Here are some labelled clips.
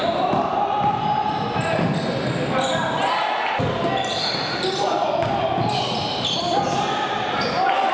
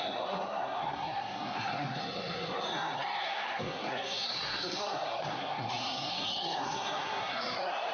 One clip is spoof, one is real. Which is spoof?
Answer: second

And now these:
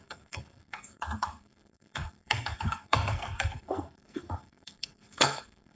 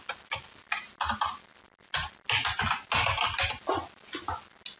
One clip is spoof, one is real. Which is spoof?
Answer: first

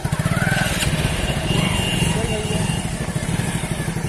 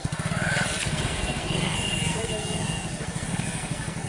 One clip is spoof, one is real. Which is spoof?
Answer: second